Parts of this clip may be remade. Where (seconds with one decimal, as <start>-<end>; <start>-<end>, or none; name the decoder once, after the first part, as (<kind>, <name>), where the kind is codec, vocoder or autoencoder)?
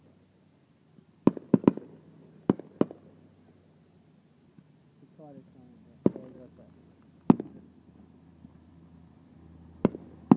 none